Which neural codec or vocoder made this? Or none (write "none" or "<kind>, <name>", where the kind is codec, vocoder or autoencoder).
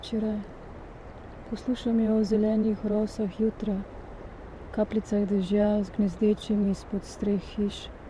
vocoder, BigVGAN v2